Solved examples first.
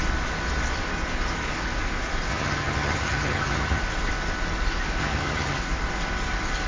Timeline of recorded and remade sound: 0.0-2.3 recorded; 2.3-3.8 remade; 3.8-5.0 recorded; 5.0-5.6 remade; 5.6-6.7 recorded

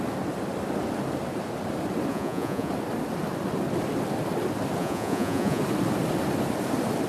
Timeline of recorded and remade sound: 0.0-2.1 recorded; 2.1-2.7 remade; 2.7-4.8 recorded; 4.8-5.6 remade; 5.6-7.1 recorded

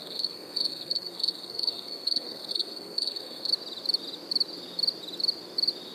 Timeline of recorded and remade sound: 0.0-3.5 remade; 3.5-5.9 recorded